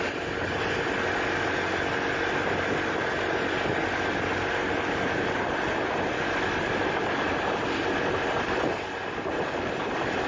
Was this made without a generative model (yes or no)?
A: yes